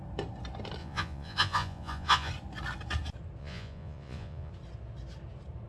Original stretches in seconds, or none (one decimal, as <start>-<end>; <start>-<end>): 0.0-0.8; 2.3-3.4; 4.5-5.7